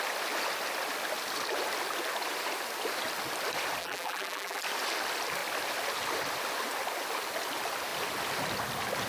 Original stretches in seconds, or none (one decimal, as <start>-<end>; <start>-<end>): 0.0-3.8; 4.6-9.1